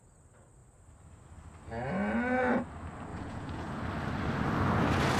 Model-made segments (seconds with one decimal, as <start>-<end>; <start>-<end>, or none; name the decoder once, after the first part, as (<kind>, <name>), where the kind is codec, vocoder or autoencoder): 3.1-3.8 (vocoder, Vocos)